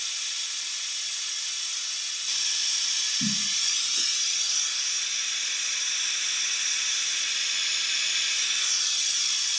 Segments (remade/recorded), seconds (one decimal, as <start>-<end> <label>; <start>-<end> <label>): 0.0-9.6 recorded